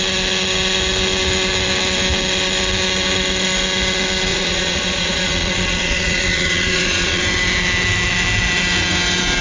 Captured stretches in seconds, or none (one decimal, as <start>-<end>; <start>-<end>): 0.0-4.3; 7.2-9.4